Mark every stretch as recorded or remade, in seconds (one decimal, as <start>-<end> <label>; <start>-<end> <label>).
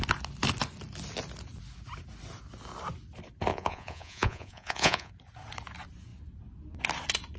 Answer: 0.0-3.5 recorded; 3.5-5.1 remade; 5.1-7.4 recorded